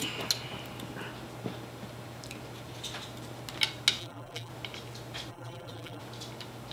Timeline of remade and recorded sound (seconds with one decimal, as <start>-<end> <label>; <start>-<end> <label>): 0.0-4.0 recorded; 4.0-4.5 remade; 4.5-5.3 recorded; 5.3-6.0 remade; 6.0-6.7 recorded